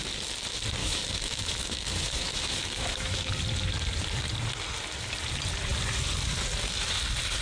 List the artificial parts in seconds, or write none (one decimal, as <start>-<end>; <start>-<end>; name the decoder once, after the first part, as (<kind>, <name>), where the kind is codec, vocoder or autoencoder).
0.8-3.3 (autoencoder, DAC-VAE)